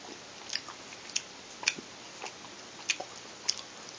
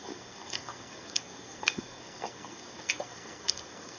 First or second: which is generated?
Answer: second